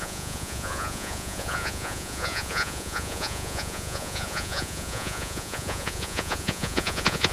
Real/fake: fake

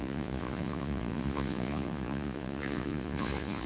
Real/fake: fake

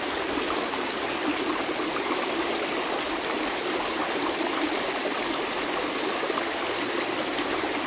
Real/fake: real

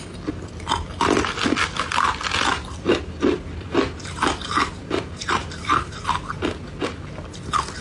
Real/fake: real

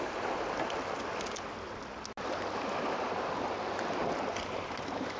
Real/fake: real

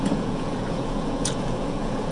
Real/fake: fake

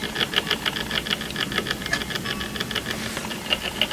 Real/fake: real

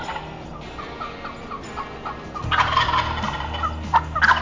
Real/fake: real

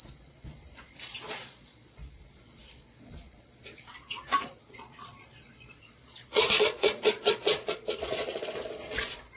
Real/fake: fake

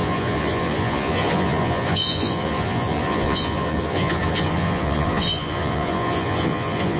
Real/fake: fake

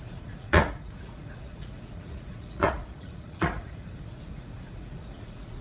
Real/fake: fake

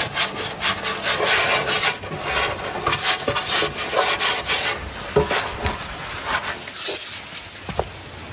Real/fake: real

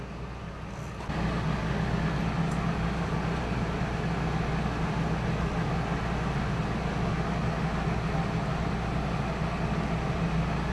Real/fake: real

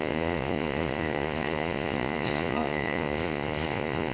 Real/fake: fake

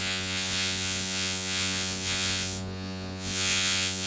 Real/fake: fake